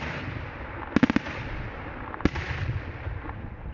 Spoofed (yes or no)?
no